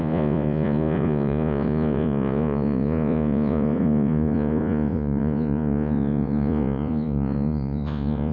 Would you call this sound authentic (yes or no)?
no